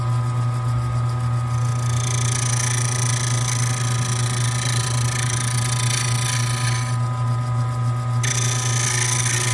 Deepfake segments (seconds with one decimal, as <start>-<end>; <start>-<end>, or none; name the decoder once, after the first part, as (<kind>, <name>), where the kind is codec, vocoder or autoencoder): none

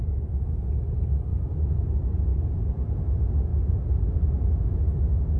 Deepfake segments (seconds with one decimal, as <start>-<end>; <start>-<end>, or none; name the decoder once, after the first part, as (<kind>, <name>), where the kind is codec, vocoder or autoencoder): none

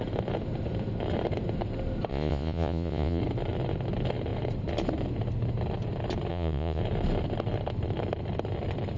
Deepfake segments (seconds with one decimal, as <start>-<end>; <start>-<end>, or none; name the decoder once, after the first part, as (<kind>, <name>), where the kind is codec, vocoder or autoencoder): 2.1-3.2 (vocoder, Vocos); 6.3-6.8

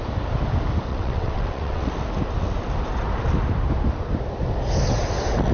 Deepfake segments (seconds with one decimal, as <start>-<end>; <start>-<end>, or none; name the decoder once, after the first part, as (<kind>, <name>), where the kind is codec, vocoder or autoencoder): 0.9-1.9 (vocoder, WaveNeXt)

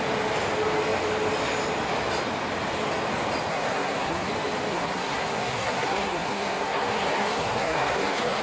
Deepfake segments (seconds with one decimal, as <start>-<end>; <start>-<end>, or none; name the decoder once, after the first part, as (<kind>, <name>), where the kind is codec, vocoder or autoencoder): 3.5-4.3 (codec, SNAC); 4.7-8.4